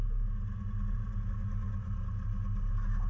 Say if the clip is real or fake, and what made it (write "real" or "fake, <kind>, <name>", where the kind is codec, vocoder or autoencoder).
real